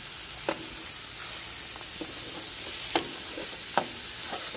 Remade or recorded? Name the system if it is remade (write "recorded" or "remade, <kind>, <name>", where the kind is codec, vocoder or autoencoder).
recorded